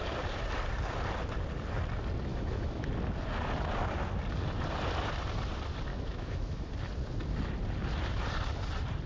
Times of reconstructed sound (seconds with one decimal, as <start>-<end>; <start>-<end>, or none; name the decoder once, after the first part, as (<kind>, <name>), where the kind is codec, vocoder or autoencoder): 2.3-2.9 (autoencoder, DAC-VAE); 5.9-6.7